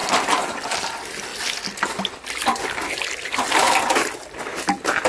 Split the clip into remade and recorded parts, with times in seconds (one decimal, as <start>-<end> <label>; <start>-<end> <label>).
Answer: 0.0-0.8 remade; 0.8-5.1 recorded